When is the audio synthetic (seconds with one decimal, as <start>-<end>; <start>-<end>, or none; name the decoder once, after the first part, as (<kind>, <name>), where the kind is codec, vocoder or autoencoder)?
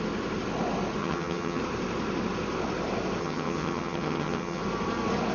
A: 1.0-1.6 (vocoder, HiFi-GAN); 3.2-4.6